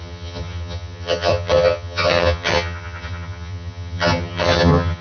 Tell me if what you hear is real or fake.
fake